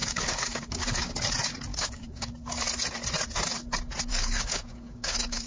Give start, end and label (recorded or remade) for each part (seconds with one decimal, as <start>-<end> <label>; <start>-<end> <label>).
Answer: 0.0-1.1 remade; 1.1-1.7 recorded; 1.7-2.6 remade; 2.6-4.1 recorded; 4.1-5.5 remade